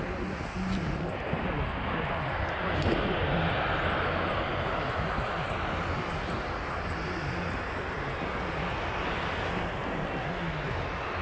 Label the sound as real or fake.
real